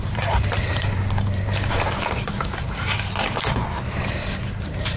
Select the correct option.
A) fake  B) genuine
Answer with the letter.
A